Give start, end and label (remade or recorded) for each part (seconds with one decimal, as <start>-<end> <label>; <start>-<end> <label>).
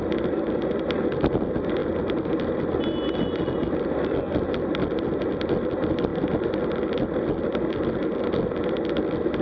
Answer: 0.0-9.4 recorded